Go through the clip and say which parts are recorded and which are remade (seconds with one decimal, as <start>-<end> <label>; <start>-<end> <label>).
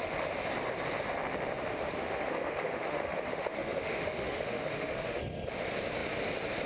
0.0-1.7 recorded; 1.7-5.2 remade; 5.2-6.7 recorded